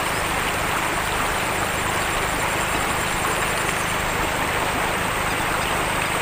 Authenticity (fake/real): real